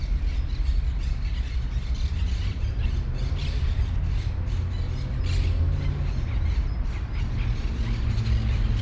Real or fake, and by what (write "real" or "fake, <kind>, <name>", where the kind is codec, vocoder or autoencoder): real